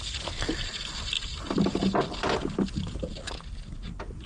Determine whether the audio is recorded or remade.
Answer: recorded